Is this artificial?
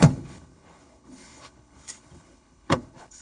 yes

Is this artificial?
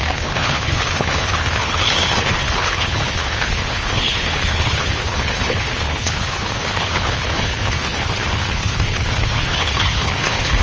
yes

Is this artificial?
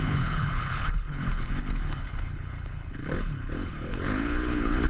yes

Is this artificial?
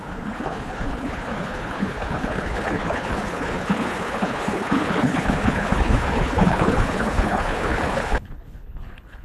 yes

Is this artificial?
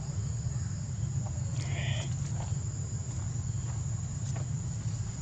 no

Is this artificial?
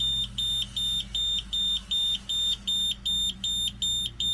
no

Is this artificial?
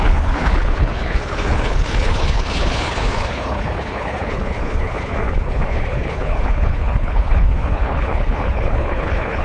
yes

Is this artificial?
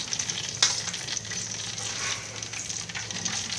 no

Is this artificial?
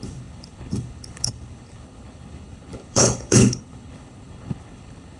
yes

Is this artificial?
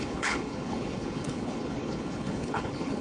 yes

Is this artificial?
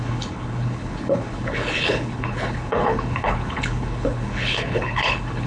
yes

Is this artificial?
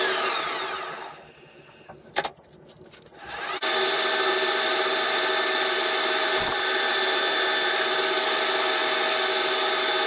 no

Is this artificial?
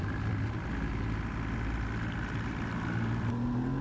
no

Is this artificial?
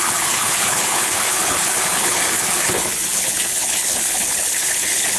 yes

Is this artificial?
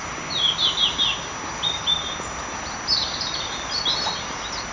no